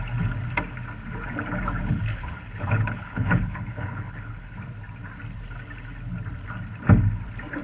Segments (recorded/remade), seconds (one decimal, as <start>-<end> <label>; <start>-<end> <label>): 0.0-2.1 recorded; 2.1-4.6 remade; 4.6-7.6 recorded